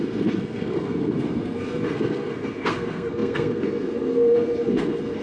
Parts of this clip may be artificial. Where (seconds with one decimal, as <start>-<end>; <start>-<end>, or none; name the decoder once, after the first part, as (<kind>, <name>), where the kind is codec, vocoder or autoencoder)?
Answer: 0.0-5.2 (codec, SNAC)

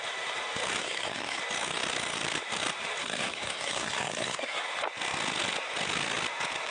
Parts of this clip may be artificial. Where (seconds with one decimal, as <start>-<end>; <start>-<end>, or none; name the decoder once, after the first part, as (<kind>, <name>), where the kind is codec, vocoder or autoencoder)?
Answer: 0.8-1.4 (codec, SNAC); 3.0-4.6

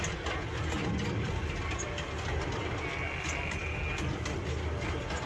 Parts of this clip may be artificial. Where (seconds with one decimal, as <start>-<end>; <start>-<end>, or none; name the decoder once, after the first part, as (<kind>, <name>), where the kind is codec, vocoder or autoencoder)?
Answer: none

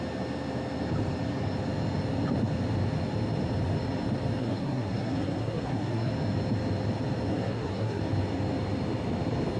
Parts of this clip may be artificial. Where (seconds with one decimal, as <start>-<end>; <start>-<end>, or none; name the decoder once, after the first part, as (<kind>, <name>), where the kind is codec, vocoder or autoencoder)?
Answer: 4.4-6.1 (codec, SNAC); 7.3-8.0

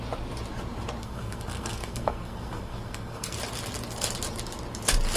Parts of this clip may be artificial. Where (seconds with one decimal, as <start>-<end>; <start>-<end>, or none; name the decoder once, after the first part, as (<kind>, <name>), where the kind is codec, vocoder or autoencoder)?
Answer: 1.0-3.4 (codec, SNAC)